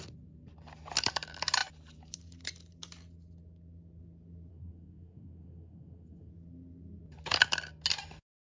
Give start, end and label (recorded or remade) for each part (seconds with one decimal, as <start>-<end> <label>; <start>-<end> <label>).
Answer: 0.0-4.5 recorded; 4.5-6.3 remade; 6.3-8.4 recorded